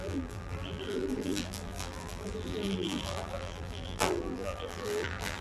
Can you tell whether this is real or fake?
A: fake